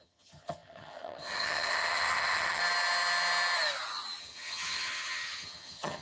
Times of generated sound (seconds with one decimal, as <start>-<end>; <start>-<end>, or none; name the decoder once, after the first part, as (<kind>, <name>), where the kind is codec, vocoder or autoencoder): 0.0-2.6 (vocoder, HiFi-GAN); 4.2-6.0